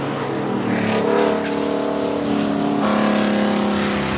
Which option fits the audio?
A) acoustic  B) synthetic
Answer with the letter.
A